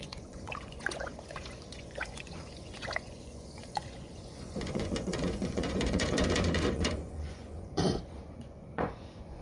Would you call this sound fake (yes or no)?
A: yes